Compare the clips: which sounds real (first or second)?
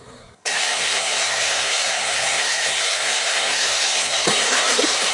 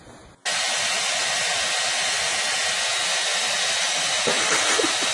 second